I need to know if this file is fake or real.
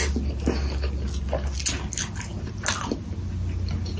real